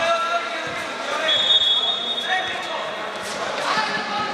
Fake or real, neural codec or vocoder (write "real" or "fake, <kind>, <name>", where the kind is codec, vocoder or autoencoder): real